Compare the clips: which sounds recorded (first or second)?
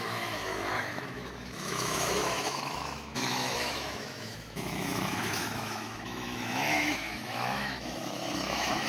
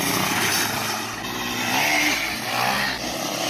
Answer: second